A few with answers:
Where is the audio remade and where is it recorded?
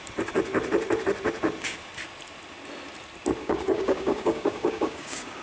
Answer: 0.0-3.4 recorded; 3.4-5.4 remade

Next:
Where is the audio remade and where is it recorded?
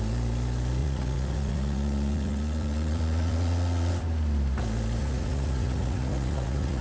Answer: 0.0-0.8 recorded; 0.8-3.9 remade; 3.9-5.0 recorded; 5.0-6.8 remade